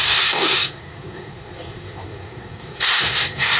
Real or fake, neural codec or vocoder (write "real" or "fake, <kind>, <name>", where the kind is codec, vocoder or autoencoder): fake, codec, SNAC